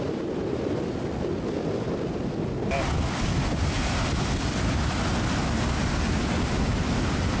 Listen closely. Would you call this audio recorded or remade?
recorded